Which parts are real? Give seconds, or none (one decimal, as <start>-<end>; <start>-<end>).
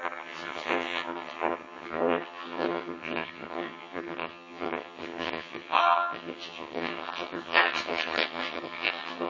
none